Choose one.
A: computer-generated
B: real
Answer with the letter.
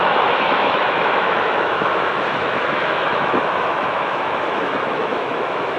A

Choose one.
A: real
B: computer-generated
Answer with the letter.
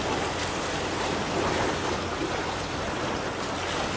A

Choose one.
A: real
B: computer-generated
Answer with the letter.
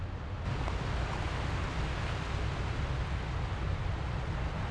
A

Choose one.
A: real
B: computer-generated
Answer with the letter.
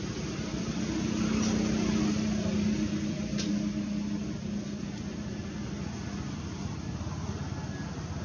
A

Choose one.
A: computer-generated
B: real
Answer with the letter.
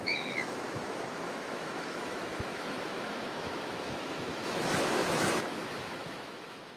A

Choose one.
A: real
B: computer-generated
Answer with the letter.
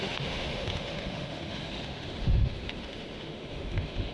B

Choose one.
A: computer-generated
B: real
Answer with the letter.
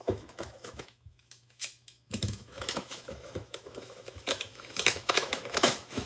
A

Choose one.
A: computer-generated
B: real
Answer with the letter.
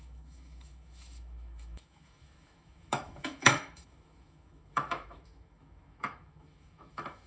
A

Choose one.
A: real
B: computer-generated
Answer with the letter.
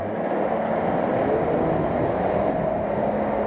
A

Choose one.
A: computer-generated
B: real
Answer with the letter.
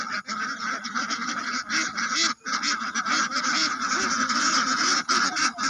B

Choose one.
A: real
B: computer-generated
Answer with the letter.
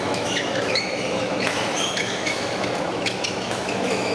B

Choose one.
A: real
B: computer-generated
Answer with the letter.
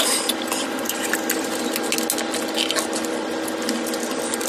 A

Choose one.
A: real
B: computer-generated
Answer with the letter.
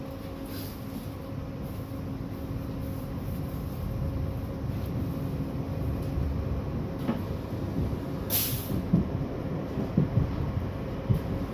A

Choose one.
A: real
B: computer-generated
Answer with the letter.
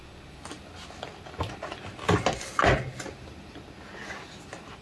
A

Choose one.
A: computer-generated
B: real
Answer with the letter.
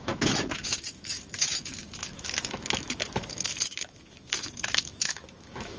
A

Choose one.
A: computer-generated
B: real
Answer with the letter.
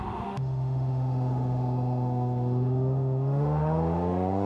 A